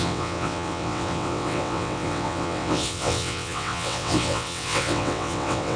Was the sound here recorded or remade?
remade